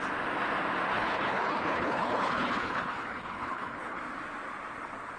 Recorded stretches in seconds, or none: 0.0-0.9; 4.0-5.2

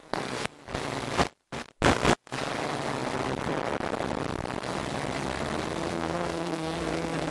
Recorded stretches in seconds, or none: 0.6-5.9

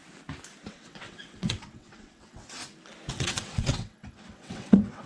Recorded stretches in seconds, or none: 0.0-0.7; 2.6-3.1